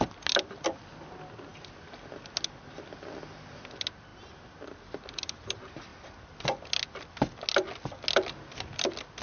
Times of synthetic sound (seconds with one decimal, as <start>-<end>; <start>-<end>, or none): none